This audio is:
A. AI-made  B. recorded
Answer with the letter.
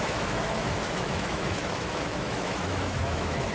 A